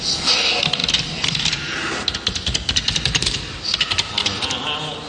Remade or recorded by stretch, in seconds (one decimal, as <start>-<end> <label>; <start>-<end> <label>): 0.0-5.1 recorded